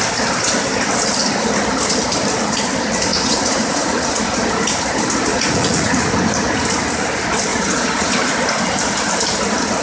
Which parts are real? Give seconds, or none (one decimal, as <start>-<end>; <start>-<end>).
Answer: 0.0-3.1; 4.2-5.3; 6.0-7.5; 8.1-9.8

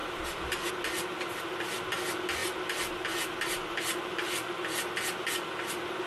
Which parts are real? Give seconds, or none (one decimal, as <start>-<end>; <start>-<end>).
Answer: 0.7-6.1

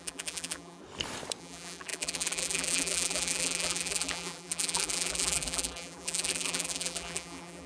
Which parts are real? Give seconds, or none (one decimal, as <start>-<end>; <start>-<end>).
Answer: 0.8-1.4

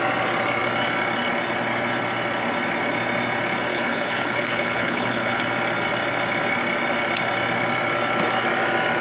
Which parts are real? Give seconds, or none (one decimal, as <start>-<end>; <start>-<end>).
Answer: 0.0-3.7; 5.4-9.0